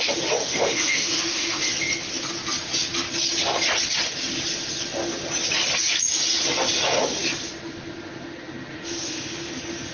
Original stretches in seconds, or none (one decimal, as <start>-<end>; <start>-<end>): 0.0-0.4; 1.7-8.7; 9.5-9.9